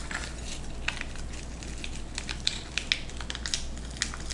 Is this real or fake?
real